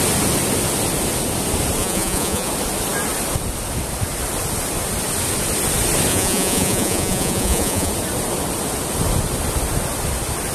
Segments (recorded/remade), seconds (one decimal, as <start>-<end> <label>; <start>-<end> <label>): 0.0-1.8 recorded; 1.8-2.5 remade; 2.5-6.1 recorded; 6.1-7.9 remade; 7.9-10.5 recorded